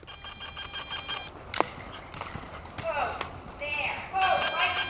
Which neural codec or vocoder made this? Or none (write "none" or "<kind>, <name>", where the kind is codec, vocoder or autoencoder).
none